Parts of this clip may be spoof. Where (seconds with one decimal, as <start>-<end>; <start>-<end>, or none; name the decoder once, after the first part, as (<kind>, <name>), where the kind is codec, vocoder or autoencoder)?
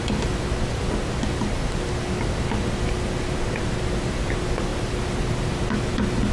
none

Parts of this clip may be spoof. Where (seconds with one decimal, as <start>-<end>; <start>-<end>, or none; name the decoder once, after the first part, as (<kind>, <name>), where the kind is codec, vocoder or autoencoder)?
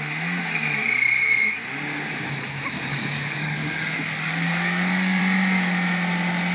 2.9-5.2 (codec, DAC)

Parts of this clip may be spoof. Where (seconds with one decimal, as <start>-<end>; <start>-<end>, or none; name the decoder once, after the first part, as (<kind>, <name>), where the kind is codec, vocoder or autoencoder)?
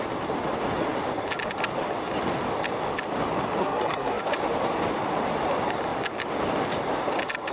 3.6-4.2 (codec, SNAC)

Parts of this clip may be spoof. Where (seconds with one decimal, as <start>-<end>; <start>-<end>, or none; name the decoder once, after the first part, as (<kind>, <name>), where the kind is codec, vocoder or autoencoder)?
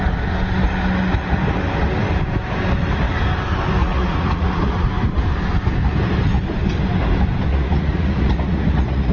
3.8-4.9 (vocoder, Vocos); 7.5-9.1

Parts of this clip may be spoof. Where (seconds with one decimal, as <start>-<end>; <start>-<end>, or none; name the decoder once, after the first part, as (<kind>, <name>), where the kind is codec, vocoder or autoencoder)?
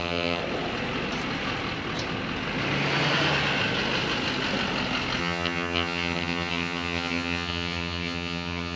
0.0-0.4 (vocoder, HiFi-GAN); 5.2-8.8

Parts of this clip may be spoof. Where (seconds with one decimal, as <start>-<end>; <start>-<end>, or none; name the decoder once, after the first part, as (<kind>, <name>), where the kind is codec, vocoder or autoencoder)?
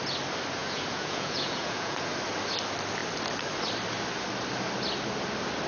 0.6-2.1 (vocoder, Vocos)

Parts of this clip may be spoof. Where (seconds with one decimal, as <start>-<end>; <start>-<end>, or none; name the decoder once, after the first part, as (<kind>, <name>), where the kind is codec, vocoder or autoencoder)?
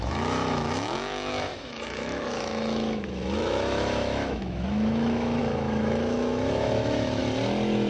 0.0-7.2 (autoencoder, DAC-VAE)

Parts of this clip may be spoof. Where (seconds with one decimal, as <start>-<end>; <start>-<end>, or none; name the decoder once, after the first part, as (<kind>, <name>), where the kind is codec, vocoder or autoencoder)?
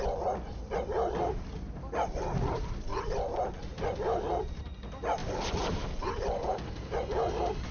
2.9-3.7 (vocoder, BigVGAN v2); 5.2-6.5